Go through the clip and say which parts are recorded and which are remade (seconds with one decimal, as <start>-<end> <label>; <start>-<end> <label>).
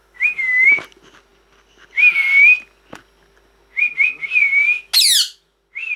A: 0.0-0.7 remade; 0.7-6.0 recorded